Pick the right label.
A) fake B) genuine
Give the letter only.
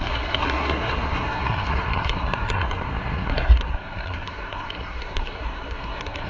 A